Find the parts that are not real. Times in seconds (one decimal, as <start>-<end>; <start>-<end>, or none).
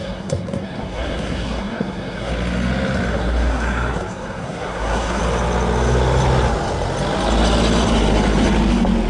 0.0-2.3; 3.1-5.2